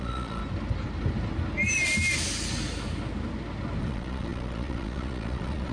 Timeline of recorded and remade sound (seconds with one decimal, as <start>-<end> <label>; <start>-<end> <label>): 0.0-0.4 remade; 0.4-3.8 recorded; 3.8-5.7 remade